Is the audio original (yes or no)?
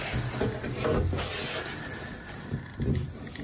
yes